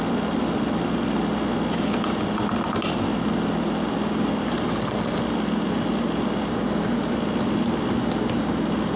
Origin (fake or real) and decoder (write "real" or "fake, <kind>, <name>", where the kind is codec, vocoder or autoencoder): real